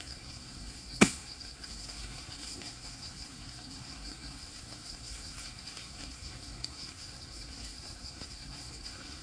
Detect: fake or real fake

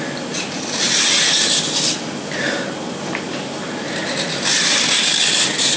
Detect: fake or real real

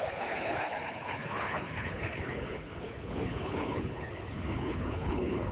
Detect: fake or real fake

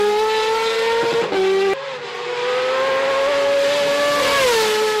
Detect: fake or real real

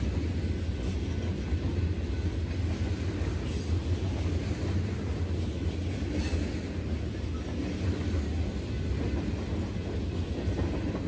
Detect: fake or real real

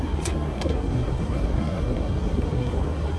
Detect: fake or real fake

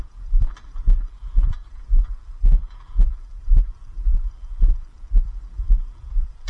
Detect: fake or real fake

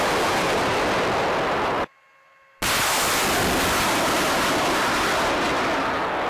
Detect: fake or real real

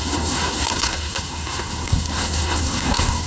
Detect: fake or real fake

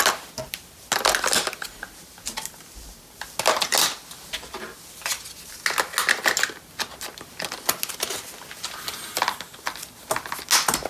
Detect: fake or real real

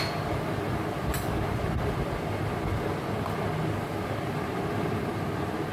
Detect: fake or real real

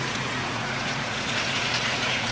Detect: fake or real fake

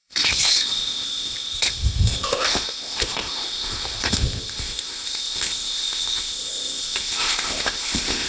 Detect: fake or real fake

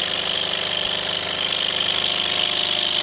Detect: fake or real real